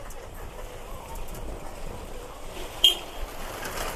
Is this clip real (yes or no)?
no